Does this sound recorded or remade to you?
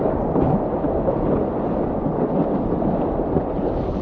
recorded